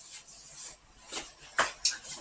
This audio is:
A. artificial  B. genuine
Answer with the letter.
B